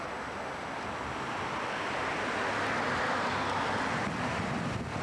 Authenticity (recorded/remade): recorded